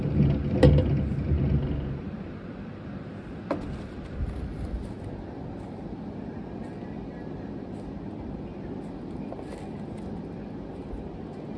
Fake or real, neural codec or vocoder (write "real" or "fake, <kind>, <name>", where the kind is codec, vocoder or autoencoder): real